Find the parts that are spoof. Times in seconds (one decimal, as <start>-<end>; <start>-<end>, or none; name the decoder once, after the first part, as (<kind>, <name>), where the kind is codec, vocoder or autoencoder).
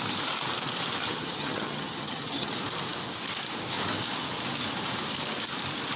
1.1-2.5 (vocoder, HiFi-GAN)